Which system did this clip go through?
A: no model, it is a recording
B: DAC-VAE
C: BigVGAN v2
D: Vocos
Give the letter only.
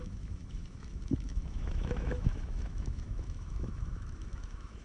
B